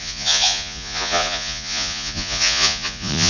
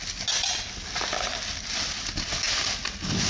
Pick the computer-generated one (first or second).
first